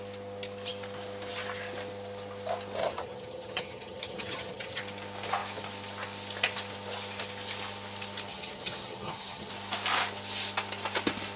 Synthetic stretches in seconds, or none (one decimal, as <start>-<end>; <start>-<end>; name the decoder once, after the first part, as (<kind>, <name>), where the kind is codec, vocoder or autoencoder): 2.8-4.8 (vocoder, HiFi-GAN); 8.3-9.5